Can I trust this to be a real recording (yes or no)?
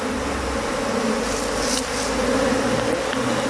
yes